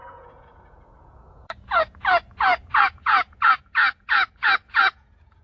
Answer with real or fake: fake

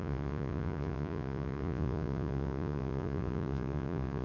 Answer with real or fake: fake